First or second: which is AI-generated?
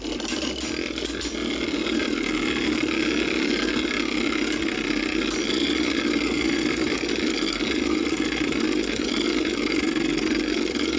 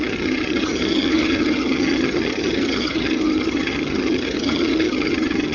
second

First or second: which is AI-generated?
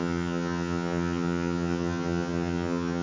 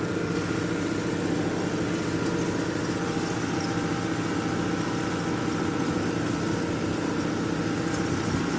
first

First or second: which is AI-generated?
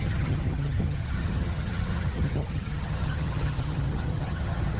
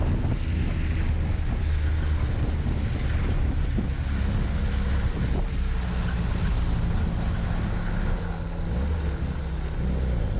first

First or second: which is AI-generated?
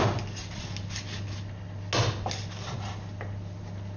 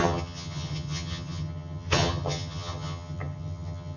second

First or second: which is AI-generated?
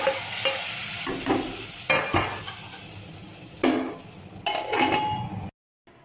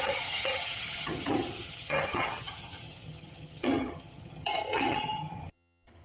second